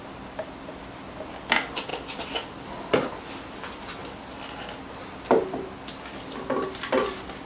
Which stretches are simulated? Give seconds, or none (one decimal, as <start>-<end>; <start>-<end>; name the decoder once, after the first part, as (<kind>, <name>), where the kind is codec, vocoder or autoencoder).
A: none